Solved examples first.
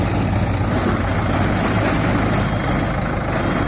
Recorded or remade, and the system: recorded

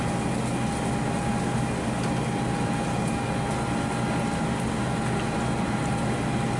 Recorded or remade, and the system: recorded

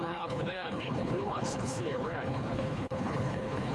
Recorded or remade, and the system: remade, codec, HILCodec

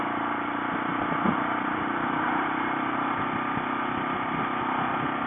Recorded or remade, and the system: recorded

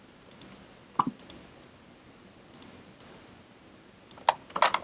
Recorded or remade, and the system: recorded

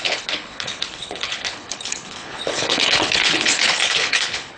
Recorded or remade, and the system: remade, codec, HILCodec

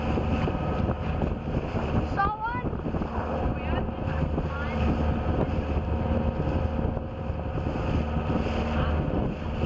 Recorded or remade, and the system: recorded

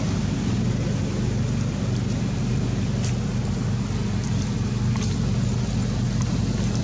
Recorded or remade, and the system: recorded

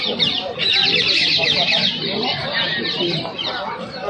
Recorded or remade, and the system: recorded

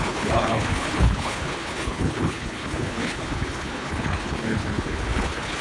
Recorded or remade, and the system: remade, codec, HILCodec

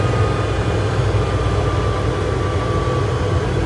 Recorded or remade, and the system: recorded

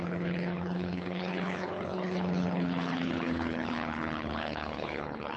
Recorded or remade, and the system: remade, codec, HILCodec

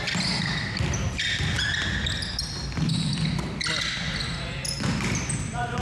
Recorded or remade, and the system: recorded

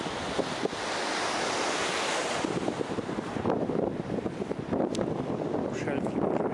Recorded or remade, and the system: recorded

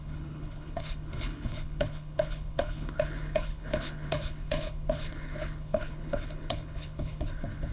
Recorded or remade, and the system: remade, codec, HILCodec